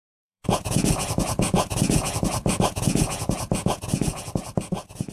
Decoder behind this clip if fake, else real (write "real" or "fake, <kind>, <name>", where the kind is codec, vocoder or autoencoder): fake, vocoder, Vocos